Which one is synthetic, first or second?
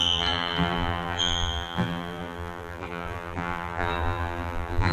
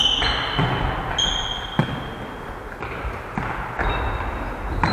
first